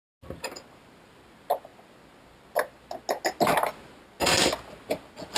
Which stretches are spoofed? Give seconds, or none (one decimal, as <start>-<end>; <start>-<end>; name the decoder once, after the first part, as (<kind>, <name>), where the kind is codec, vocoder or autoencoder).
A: none